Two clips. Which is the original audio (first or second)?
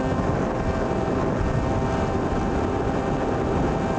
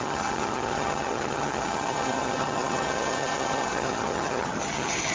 first